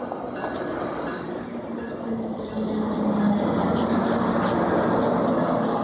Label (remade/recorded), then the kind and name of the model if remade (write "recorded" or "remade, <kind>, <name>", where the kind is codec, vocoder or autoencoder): recorded